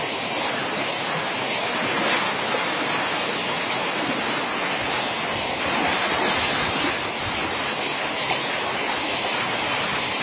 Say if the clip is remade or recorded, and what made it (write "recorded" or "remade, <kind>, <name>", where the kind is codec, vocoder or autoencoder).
recorded